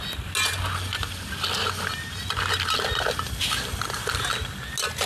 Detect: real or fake real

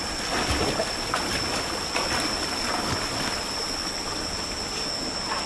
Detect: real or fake real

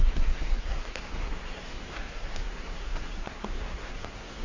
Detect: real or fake fake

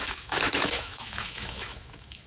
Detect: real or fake fake